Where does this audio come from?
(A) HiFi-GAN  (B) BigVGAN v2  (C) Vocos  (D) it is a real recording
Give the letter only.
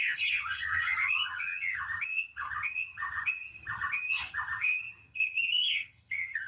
A